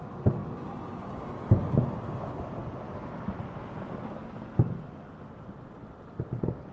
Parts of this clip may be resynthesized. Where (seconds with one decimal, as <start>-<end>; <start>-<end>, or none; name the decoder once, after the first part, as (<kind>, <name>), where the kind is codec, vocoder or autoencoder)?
0.4-1.2 (vocoder, BigVGAN v2); 4.2-6.3

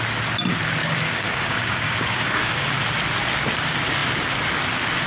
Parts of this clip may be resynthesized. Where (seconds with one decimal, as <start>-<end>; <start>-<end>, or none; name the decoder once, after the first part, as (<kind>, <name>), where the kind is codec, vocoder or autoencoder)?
0.8-2.8 (codec, DAC)

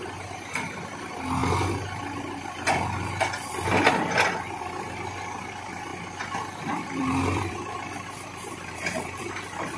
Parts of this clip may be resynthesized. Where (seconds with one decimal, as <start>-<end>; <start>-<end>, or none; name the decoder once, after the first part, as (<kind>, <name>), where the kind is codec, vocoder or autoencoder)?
0.0-1.4 (vocoder, BigVGAN v2); 4.6-5.9; 6.6-9.8

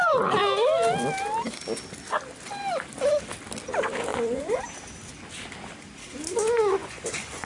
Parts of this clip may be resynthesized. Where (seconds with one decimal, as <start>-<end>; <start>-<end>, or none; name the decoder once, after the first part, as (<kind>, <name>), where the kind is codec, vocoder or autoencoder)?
4.1-4.6 (vocoder, Vocos); 6.8-7.5

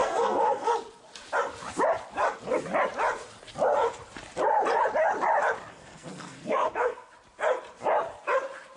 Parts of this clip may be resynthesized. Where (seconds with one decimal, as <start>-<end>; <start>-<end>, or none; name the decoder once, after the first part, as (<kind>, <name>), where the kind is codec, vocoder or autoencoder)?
0.0-0.7 (codec, SNAC); 5.7-7.1

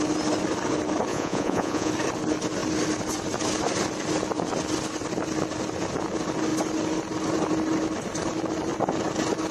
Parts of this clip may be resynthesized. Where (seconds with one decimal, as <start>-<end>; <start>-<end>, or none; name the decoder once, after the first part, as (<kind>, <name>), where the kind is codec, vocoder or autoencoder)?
1.1-1.9 (vocoder, Vocos)

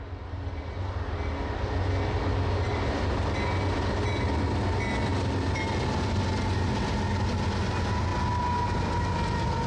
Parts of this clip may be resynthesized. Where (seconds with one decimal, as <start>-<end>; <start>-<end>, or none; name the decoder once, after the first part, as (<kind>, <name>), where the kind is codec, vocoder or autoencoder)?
none

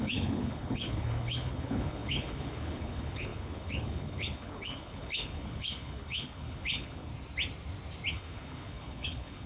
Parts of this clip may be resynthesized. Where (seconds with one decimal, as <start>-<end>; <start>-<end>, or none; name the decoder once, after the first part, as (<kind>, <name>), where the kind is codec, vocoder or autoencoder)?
0.0-7.1 (codec, HILCodec); 8.1-9.5